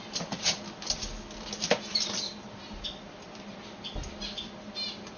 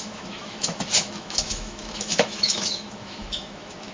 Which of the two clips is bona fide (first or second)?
first